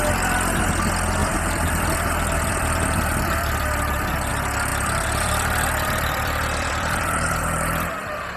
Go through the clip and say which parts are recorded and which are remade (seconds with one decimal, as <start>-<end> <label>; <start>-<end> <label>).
0.0-1.2 recorded; 1.2-4.3 remade; 4.3-4.7 recorded; 4.7-7.9 remade; 7.9-8.4 recorded